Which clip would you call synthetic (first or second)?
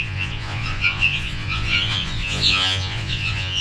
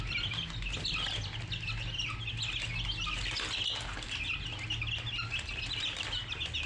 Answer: first